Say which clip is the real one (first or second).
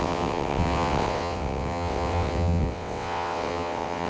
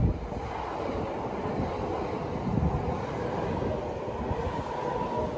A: second